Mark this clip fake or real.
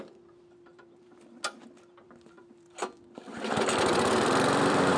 fake